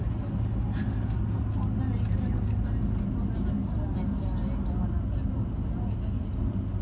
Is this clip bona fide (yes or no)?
yes